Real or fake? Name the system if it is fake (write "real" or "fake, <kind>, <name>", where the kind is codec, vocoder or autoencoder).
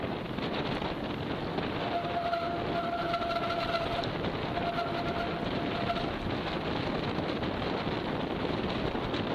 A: real